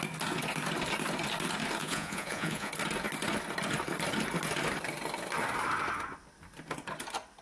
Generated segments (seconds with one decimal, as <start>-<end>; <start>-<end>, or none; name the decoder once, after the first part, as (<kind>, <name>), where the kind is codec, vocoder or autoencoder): 1.8-2.7 (vocoder, Vocos)